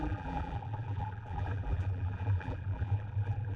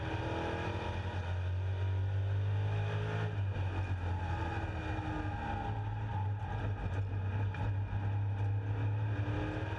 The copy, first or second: first